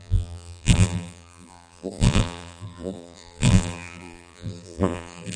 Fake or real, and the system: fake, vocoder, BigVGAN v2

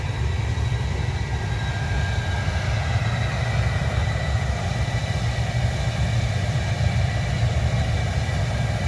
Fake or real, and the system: fake, vocoder, BigVGAN v2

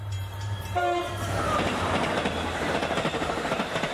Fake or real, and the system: fake, vocoder, BigVGAN v2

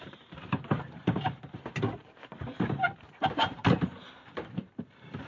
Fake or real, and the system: fake, vocoder, BigVGAN v2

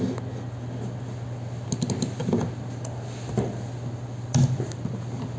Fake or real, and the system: real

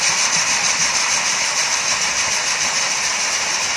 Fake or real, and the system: fake, vocoder, BigVGAN v2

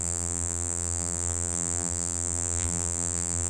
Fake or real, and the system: fake, vocoder, BigVGAN v2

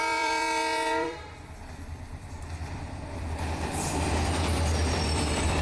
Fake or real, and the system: fake, vocoder, BigVGAN v2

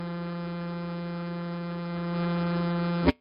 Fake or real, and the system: fake, vocoder, BigVGAN v2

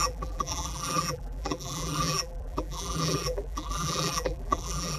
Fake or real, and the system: fake, vocoder, BigVGAN v2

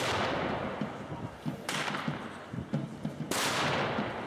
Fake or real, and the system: real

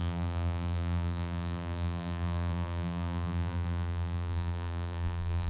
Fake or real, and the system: fake, vocoder, BigVGAN v2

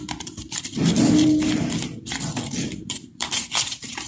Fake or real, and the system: fake, vocoder, BigVGAN v2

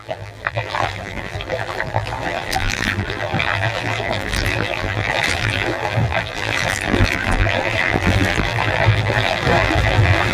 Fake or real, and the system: fake, vocoder, BigVGAN v2